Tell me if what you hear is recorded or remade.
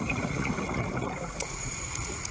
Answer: remade